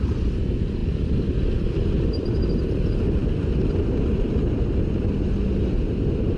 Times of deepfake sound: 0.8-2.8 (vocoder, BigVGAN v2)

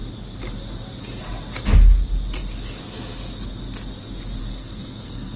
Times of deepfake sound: 4.4-5.4 (codec, SNAC)

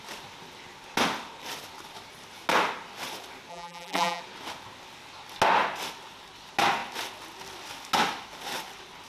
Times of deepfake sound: 3.5-4.2 (vocoder, BigVGAN v2)

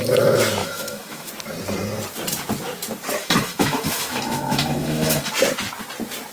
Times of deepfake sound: 0.6-1.3 (autoencoder, DAC-VAE); 3.2-5.3

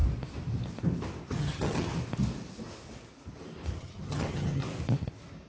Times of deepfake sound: 1.3-1.9 (vocoder, HiFi-GAN); 3.8-4.6